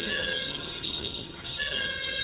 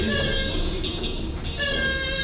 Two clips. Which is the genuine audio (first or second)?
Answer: second